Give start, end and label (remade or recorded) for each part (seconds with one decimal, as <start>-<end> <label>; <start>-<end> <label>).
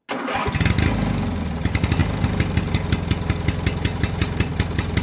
0.0-5.0 recorded